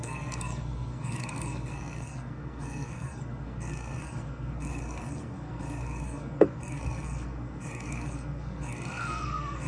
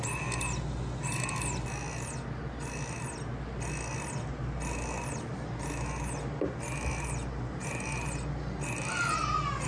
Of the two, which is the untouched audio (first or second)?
second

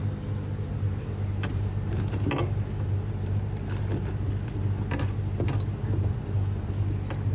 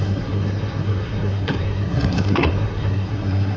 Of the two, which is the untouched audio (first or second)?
first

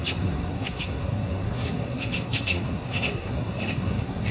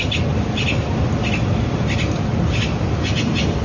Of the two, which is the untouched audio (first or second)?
second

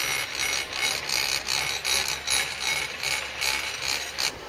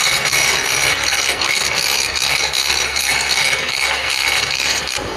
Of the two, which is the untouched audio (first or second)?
first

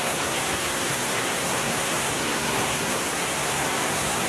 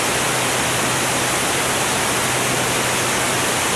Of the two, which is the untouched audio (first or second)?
second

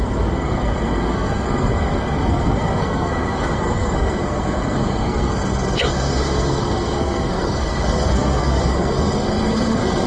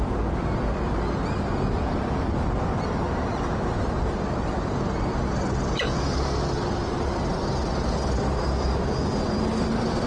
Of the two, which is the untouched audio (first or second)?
second